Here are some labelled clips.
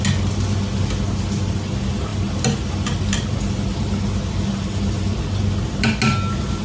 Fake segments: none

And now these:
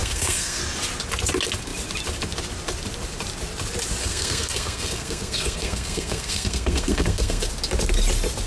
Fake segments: 0.0-0.6 (codec, SNAC); 4.0-7.5

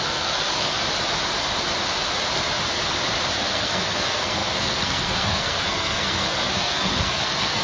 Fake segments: 0.0-0.8 (codec, SNAC); 3.4-7.6

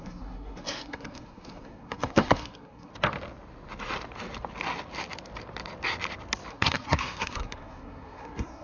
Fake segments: 0.0-2.9 (codec, SNAC); 6.5-8.6

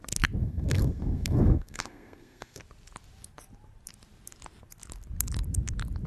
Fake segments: 0.4-2.6 (codec, SNAC)

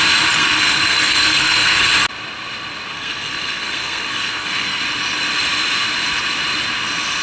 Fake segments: 0.4-1.9 (codec, SNAC); 2.9-4.8

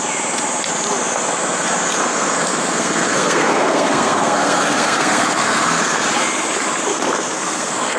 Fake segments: 2.0-6.0 (codec, SNAC); 6.9-8.0